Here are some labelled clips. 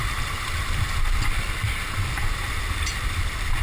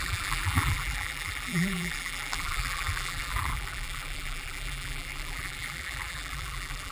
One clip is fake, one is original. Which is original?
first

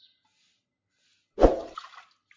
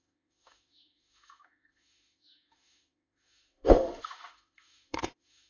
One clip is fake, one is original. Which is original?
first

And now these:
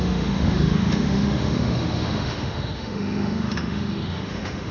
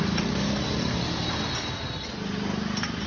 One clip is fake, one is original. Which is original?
second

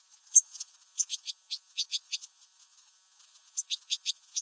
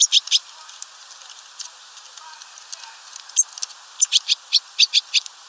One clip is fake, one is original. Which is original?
second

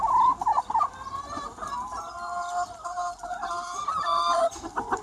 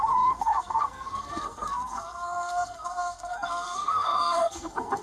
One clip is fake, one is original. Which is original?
first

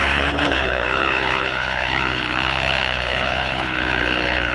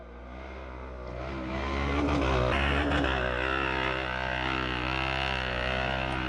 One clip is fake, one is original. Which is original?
second